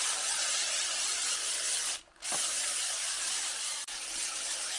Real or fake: real